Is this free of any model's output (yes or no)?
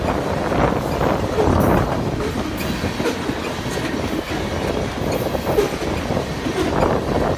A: yes